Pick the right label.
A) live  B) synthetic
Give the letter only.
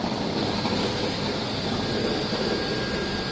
A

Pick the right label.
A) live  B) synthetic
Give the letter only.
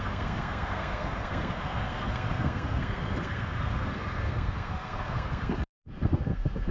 B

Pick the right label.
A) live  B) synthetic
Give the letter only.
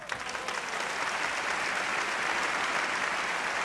A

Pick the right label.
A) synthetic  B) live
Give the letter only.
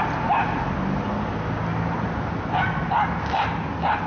B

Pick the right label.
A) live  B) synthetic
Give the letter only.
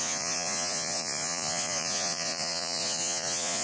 B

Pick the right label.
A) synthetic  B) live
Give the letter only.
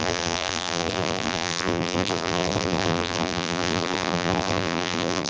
A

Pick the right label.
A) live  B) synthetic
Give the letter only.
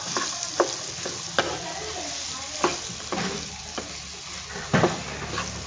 A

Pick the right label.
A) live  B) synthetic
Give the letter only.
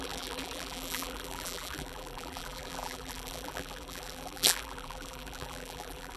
B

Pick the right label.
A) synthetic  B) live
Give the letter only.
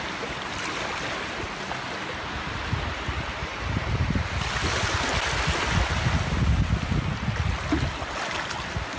B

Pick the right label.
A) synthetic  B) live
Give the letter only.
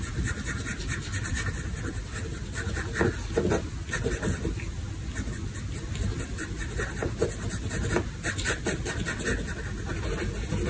B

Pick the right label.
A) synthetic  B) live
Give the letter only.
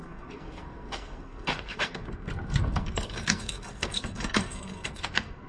A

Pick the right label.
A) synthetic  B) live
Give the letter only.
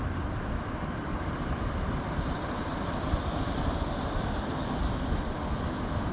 B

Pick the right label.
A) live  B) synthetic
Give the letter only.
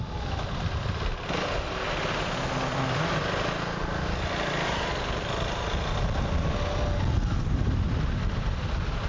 A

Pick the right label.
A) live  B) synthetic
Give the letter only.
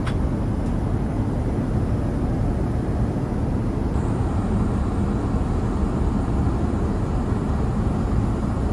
A